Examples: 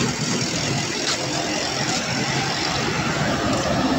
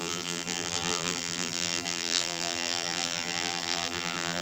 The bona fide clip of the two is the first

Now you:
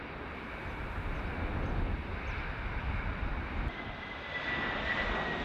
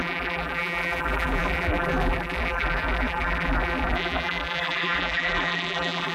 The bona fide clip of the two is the first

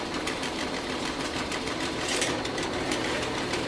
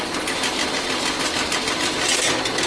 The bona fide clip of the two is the second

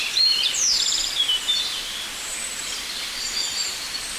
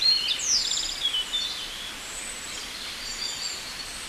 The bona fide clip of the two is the second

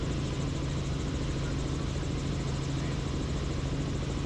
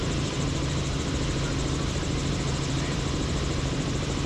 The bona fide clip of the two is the first